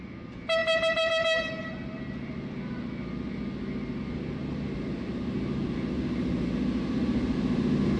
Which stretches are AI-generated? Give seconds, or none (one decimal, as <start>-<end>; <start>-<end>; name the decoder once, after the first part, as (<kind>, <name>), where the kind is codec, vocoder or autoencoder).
none